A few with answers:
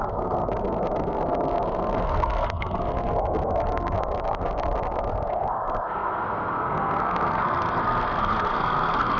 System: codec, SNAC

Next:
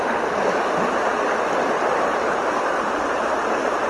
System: none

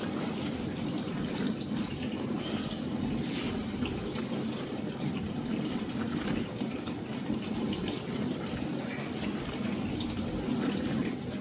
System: none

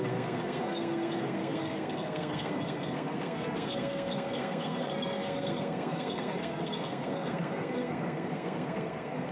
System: codec, SNAC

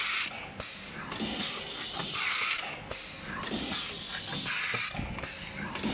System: none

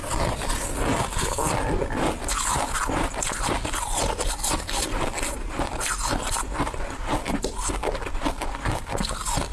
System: none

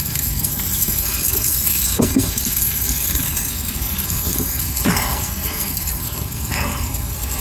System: codec, SNAC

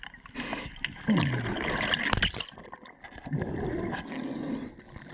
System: none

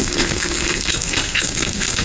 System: codec, SNAC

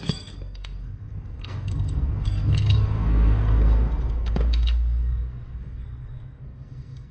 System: codec, SNAC